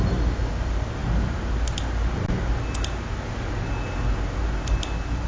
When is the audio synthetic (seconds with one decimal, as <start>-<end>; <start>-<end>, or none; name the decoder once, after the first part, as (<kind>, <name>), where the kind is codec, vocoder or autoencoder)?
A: none